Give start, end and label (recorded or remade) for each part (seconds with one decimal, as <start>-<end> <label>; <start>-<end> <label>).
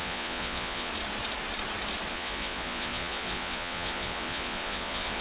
0.0-0.9 remade; 0.9-2.1 recorded; 2.1-5.2 remade